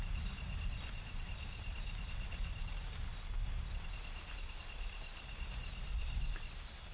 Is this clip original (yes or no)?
yes